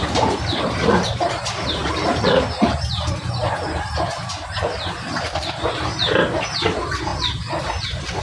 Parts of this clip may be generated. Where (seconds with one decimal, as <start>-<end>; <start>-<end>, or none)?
0.0-8.2

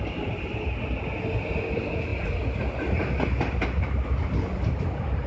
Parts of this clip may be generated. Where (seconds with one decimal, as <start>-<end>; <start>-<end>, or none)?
none

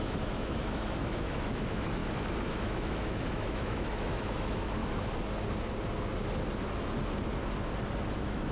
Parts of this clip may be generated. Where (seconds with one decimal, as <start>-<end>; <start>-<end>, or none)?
0.0-2.0; 2.5-4.8; 8.1-8.5

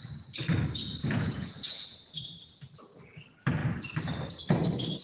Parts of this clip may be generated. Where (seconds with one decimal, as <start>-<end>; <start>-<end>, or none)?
1.0-2.7

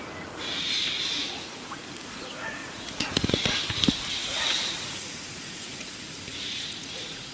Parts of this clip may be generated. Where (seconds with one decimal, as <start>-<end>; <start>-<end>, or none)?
1.2-1.8; 2.6-3.6; 4.2-7.3

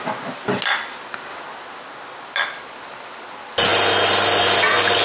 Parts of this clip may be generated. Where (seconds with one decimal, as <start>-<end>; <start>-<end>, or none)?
none